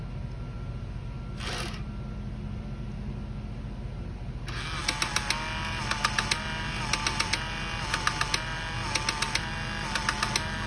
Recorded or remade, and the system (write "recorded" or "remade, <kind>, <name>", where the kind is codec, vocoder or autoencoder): recorded